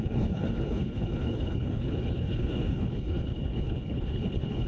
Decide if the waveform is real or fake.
fake